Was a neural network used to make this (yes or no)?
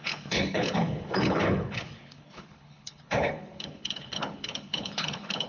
yes